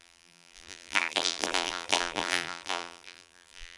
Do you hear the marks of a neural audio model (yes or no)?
yes